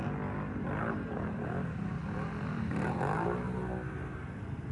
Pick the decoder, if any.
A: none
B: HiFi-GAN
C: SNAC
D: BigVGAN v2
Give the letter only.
A